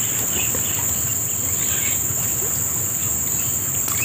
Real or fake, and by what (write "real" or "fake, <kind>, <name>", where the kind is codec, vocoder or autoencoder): real